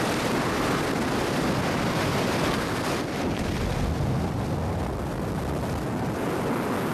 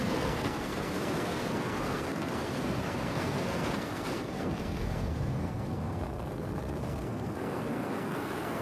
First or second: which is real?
first